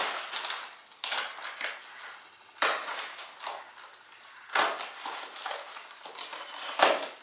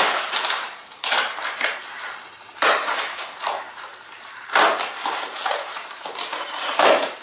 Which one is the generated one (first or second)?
second